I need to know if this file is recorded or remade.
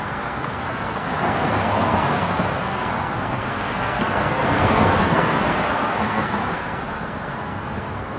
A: remade